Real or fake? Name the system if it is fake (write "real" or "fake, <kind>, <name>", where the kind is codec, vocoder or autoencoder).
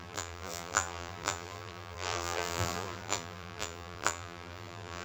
fake, vocoder, BigVGAN v2